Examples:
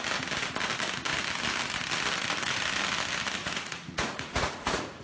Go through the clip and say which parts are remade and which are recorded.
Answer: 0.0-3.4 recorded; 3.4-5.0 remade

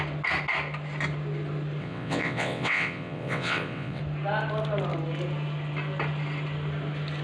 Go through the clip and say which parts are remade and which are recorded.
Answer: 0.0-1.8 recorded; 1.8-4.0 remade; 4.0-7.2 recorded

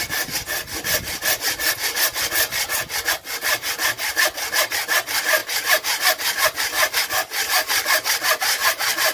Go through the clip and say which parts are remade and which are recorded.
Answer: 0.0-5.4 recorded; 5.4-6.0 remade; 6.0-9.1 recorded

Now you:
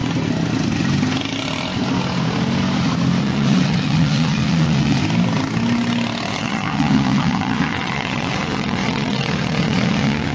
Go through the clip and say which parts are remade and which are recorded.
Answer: 0.0-3.2 recorded; 3.2-5.0 remade; 5.0-6.3 recorded; 6.3-10.3 remade

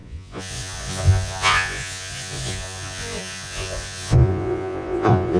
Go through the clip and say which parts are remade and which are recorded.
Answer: 0.0-5.4 remade